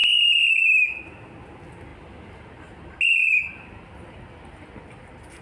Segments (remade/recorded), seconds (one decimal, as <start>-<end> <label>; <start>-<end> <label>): 0.0-5.4 recorded

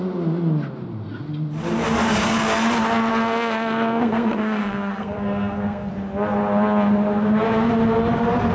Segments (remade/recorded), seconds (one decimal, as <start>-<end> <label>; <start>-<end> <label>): 0.0-3.1 recorded; 3.1-5.9 remade; 5.9-8.5 recorded

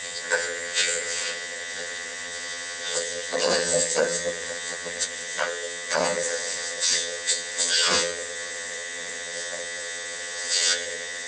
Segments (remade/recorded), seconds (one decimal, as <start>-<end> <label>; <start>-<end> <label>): 0.0-11.3 remade

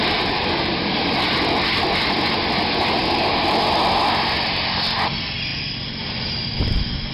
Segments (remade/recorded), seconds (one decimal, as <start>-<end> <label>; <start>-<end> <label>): 0.0-7.1 recorded

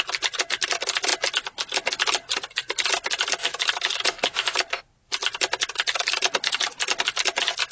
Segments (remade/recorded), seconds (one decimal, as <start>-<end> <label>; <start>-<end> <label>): 0.0-7.7 recorded

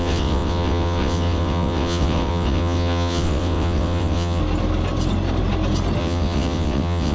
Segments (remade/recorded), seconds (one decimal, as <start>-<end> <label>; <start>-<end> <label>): 0.0-4.4 remade; 4.4-6.0 recorded; 6.0-7.1 remade

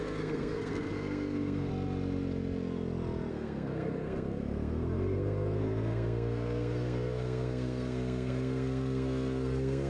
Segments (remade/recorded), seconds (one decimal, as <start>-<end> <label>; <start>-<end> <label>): 0.0-1.7 remade; 1.7-3.3 recorded; 3.3-9.9 remade